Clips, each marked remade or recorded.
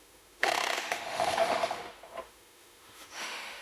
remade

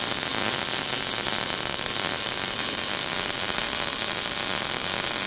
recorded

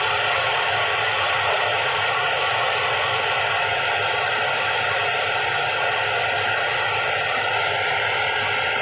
recorded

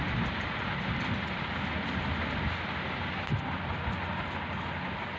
recorded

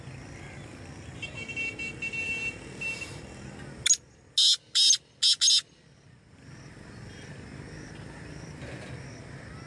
recorded